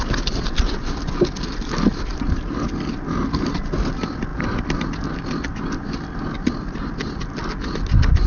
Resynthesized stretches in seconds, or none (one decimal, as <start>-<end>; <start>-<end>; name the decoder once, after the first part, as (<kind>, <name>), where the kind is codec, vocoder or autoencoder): none